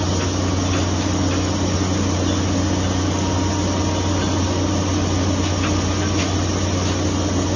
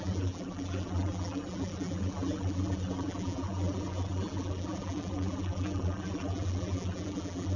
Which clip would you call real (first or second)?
first